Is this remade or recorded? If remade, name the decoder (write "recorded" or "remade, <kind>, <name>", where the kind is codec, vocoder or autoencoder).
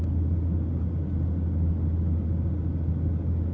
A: recorded